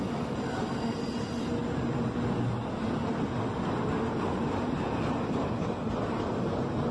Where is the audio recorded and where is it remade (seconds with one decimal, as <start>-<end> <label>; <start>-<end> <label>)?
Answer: 0.0-6.9 recorded